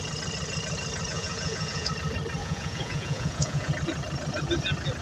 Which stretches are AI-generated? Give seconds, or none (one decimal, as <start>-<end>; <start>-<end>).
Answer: 1.1-1.9; 2.4-3.7